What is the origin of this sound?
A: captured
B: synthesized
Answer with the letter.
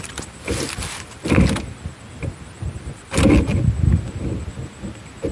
A